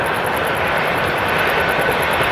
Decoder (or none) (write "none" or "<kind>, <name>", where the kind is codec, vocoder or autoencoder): vocoder, BigVGAN v2